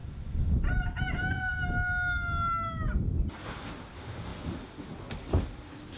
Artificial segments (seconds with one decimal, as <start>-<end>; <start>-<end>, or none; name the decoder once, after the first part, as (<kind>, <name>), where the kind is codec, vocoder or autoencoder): 0.0-0.5 (vocoder, Vocos)